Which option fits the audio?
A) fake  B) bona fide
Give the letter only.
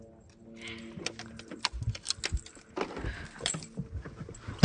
B